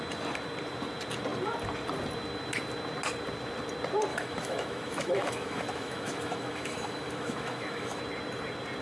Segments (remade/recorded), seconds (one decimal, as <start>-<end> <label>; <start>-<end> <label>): 0.0-4.1 recorded; 4.1-8.0 remade; 8.0-8.8 recorded

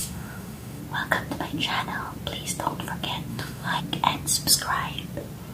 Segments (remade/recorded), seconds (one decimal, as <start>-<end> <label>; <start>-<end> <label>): 0.0-0.8 remade; 0.8-3.3 recorded; 3.3-3.8 remade; 3.8-5.5 recorded